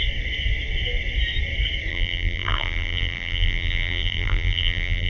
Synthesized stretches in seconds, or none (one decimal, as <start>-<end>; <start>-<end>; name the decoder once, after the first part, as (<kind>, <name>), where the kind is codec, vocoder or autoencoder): 1.9-5.1 (vocoder, BigVGAN v2)

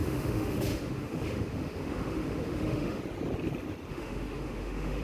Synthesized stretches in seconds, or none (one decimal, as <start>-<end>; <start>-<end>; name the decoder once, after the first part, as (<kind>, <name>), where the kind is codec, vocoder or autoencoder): 0.0-3.0 (autoencoder, DAC-VAE); 3.9-5.0